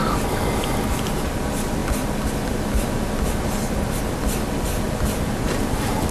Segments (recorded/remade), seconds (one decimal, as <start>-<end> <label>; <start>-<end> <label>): 0.0-6.1 recorded